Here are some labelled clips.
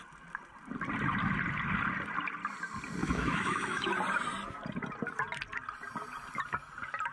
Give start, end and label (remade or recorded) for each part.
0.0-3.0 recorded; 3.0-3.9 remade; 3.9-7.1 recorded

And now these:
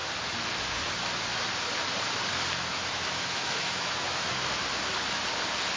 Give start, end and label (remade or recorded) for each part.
0.0-2.7 recorded; 2.7-4.6 remade; 4.6-5.8 recorded

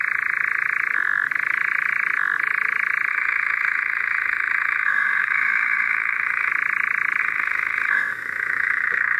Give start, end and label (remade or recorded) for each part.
0.0-3.1 recorded; 3.1-6.5 remade; 6.5-7.2 recorded; 7.2-9.2 remade

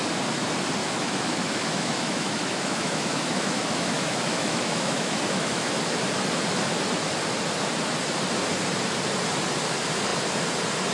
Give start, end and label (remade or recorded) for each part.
0.0-0.8 recorded; 0.8-5.7 remade; 5.7-10.9 recorded

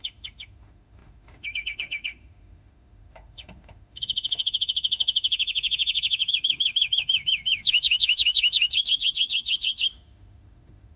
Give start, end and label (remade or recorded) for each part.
0.0-11.0 remade

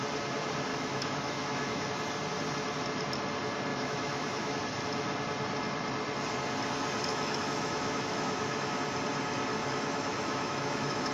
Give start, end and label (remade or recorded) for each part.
0.0-0.7 recorded; 0.7-1.9 remade; 1.9-3.7 recorded; 3.7-4.6 remade; 4.6-7.1 recorded; 7.1-8.8 remade; 8.8-9.5 recorded; 9.5-11.1 remade

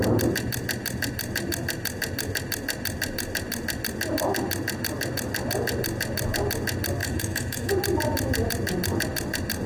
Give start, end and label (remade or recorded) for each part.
0.0-7.0 recorded; 7.0-7.7 remade; 7.7-9.7 recorded